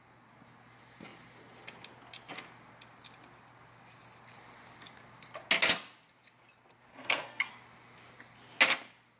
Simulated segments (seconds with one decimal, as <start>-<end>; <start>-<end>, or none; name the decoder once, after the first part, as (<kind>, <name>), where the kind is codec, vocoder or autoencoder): 6.9-7.5 (codec, SNAC)